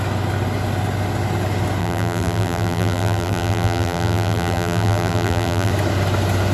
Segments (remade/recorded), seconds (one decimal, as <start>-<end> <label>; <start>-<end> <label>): 0.0-1.8 recorded; 1.8-5.7 remade; 5.7-6.5 recorded